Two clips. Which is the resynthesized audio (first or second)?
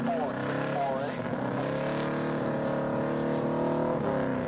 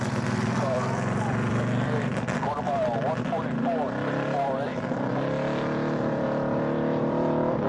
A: second